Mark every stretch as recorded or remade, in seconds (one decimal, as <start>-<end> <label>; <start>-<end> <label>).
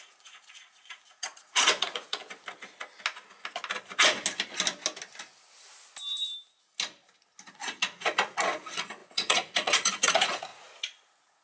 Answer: 0.0-2.2 remade; 2.2-7.5 recorded; 7.5-11.4 remade